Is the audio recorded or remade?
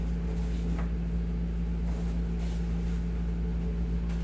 recorded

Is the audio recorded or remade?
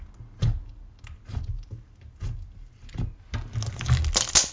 recorded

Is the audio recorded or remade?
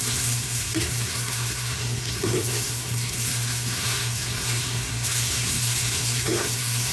remade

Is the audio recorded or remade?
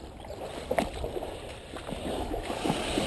recorded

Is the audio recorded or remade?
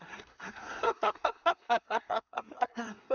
remade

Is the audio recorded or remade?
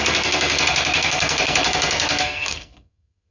remade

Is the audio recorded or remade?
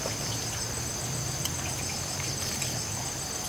recorded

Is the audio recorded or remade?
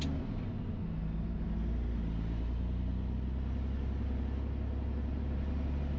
recorded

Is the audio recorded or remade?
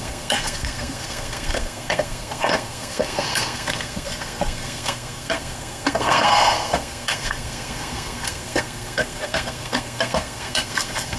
remade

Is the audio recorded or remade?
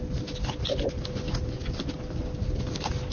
recorded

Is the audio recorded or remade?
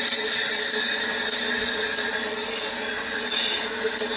recorded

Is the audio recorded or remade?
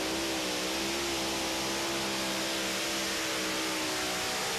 recorded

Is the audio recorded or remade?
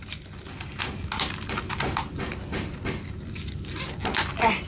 recorded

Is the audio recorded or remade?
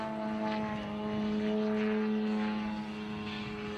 recorded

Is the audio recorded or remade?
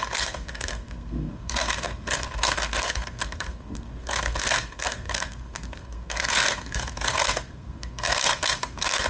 remade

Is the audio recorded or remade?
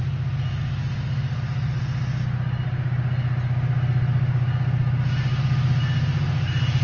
recorded